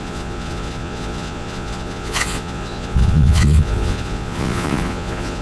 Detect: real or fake fake